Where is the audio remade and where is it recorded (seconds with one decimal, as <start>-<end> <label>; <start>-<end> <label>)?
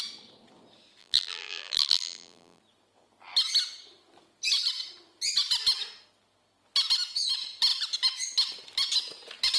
0.0-1.0 recorded; 1.0-2.6 remade; 2.6-9.6 recorded